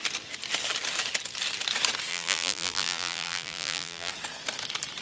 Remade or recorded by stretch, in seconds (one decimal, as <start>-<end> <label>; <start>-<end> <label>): 0.0-2.1 recorded; 2.1-4.1 remade; 4.1-5.0 recorded